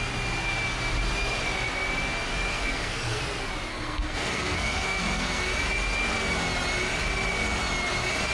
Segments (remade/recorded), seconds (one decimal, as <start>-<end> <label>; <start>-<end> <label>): 0.0-2.5 recorded; 2.5-3.2 remade; 3.2-3.7 recorded; 3.7-5.4 remade; 5.4-8.3 recorded